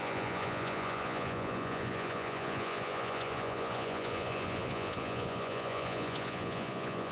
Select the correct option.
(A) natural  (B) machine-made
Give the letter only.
B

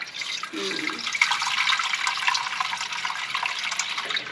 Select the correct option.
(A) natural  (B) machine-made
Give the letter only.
A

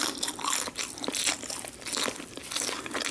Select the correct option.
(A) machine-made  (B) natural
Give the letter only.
B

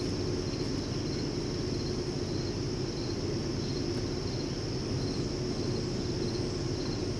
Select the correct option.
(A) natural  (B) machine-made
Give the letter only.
A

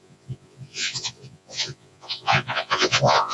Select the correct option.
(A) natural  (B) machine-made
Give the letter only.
B